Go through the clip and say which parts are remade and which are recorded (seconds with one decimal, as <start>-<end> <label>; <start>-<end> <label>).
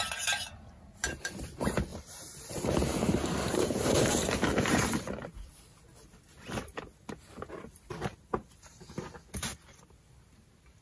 0.0-1.9 recorded; 1.9-5.0 remade; 5.0-8.1 recorded; 8.1-9.0 remade; 9.0-10.8 recorded